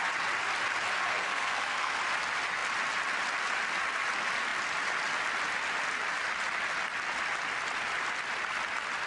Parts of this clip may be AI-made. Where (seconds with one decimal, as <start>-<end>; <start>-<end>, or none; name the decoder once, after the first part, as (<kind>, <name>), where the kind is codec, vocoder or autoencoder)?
1.1-2.0 (codec, SNAC)